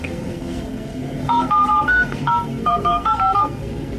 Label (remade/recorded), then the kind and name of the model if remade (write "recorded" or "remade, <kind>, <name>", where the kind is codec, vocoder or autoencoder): remade, codec, SNAC